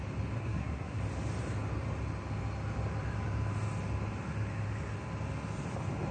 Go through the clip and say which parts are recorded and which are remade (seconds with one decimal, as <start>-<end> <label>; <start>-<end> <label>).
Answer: 0.0-0.4 recorded; 0.4-1.0 remade; 1.0-6.1 recorded